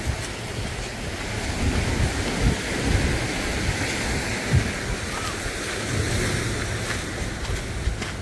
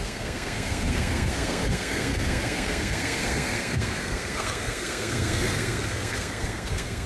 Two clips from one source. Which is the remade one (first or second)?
second